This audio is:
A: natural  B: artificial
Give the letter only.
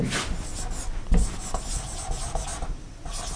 A